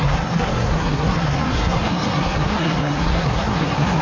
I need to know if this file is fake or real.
fake